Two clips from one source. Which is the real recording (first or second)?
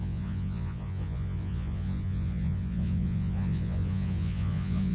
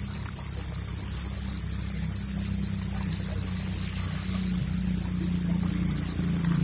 second